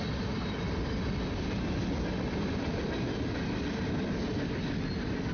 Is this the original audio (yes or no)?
yes